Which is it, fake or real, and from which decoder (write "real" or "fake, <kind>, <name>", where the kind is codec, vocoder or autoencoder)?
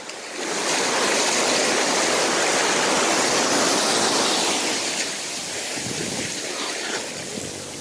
real